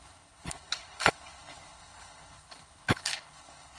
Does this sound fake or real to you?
fake